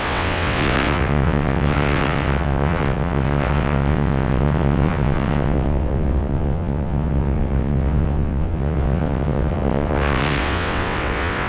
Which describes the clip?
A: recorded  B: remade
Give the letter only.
B